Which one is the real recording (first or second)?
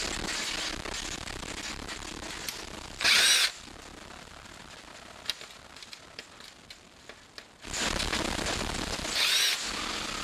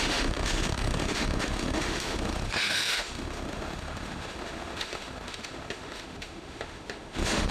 first